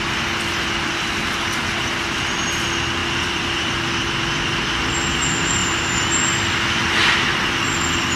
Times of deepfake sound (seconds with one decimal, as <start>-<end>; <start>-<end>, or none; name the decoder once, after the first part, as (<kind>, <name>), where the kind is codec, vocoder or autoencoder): 3.0-4.6 (vocoder, BigVGAN v2)